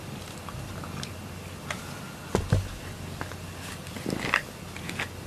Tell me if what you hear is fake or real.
real